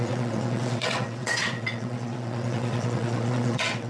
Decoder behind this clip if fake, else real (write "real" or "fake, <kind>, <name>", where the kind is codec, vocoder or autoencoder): fake, vocoder, WaveNeXt